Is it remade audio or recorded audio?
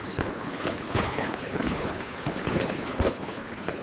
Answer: remade